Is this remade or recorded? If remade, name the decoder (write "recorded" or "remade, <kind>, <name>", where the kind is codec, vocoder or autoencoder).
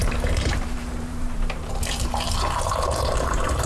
remade, vocoder, BigVGAN v2